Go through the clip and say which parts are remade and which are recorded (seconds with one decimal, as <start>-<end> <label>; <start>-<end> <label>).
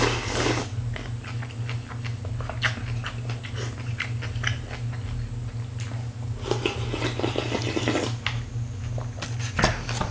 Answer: 0.0-10.1 recorded